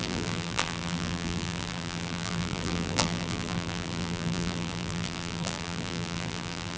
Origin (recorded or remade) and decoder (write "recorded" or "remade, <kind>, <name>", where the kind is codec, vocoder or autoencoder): remade, vocoder, BigVGAN v2